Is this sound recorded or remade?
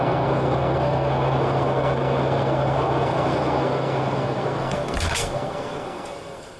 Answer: remade